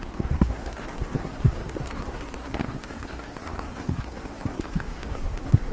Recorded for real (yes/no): no